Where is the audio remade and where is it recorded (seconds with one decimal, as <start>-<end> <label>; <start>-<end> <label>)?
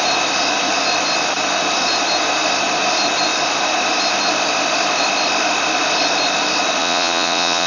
0.0-6.8 recorded; 6.8-7.7 remade